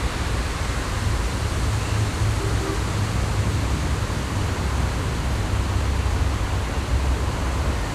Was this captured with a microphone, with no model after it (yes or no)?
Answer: yes